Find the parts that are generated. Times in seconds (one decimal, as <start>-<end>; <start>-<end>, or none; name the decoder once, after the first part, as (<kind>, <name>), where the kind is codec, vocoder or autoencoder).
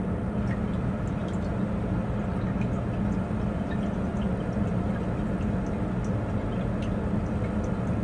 none